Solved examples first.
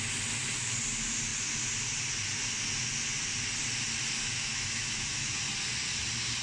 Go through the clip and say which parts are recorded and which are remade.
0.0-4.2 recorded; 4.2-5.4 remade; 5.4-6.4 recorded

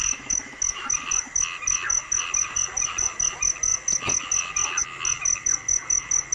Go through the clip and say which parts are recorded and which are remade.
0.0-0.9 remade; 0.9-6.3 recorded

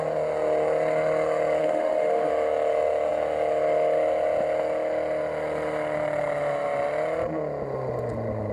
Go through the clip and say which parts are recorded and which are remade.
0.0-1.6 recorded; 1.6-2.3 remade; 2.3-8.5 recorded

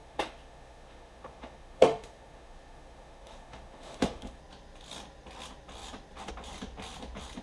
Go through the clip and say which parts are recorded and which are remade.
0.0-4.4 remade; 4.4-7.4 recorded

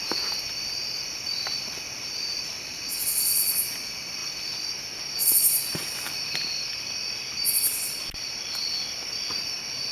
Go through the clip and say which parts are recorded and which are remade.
0.0-9.9 recorded